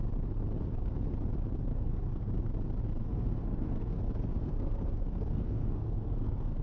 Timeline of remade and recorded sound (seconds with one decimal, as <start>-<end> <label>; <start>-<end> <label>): 0.0-1.7 recorded; 1.7-2.3 remade; 2.3-3.0 recorded; 3.0-4.0 remade; 4.0-4.4 recorded; 4.4-6.6 remade